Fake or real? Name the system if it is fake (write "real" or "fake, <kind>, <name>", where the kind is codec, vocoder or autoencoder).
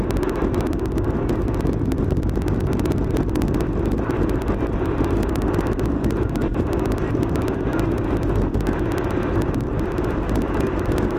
real